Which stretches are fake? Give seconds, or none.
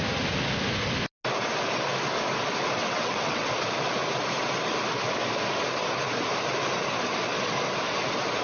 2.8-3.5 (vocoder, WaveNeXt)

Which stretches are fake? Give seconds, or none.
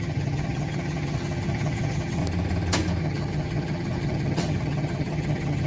0.0-2.2 (vocoder, HiFi-GAN); 3.0-5.7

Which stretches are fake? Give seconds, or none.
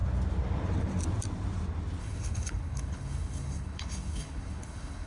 2.0-5.1 (codec, HILCodec)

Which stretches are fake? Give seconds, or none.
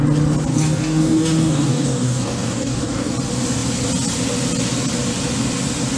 0.5-3.1 (codec, DAC)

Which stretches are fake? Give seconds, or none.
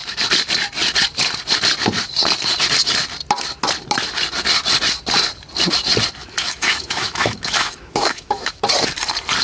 6.2-8.6 (autoencoder, DAC-VAE)